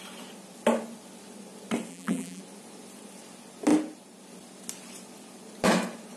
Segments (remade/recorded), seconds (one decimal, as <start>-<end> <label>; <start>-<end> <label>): 0.0-1.9 recorded; 1.9-2.4 remade; 2.4-6.2 recorded